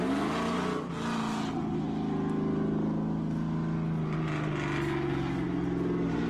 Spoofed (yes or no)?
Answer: no